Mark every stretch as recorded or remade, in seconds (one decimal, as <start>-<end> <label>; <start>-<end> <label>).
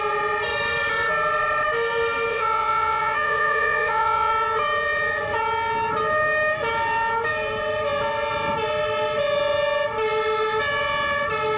0.0-2.3 recorded; 2.3-4.3 remade; 4.3-11.6 recorded